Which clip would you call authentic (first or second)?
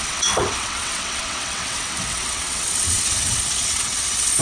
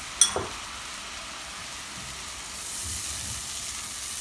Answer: second